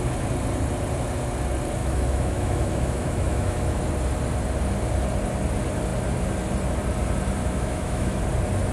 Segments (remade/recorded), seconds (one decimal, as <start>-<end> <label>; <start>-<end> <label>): 0.0-1.8 recorded; 1.8-3.8 remade; 3.8-7.4 recorded; 7.4-8.2 remade; 8.2-8.7 recorded